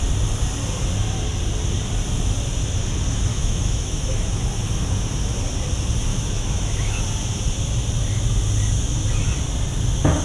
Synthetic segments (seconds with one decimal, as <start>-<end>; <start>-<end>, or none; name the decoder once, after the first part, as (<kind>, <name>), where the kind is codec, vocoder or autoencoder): 3.3-4.4 (autoencoder, DAC-VAE); 6.1-7.0